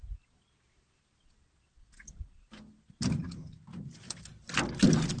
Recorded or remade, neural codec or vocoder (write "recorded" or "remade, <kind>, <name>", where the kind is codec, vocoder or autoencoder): recorded